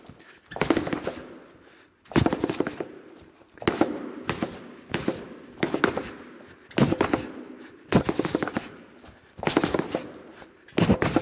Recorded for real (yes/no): yes